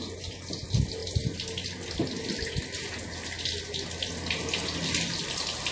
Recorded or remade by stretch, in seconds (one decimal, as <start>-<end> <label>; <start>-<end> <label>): 0.0-5.7 recorded

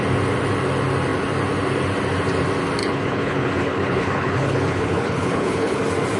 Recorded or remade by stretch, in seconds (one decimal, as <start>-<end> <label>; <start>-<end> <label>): 0.0-2.8 recorded; 2.8-5.8 remade; 5.8-6.2 recorded

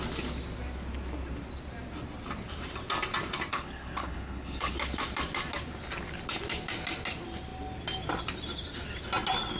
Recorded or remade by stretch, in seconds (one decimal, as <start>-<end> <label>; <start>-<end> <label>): 0.0-3.5 recorded; 3.5-4.7 remade; 4.7-9.6 recorded

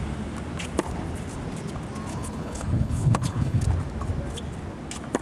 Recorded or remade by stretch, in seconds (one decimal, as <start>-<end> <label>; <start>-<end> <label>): 0.0-2.1 recorded; 2.1-3.6 remade; 3.6-5.2 recorded

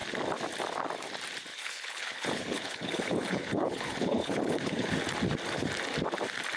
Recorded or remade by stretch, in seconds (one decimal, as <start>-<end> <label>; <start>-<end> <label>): 0.0-1.5 recorded; 1.5-4.9 remade; 4.9-6.6 recorded